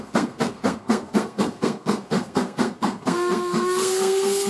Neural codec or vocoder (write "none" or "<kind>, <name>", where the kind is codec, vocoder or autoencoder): codec, SNAC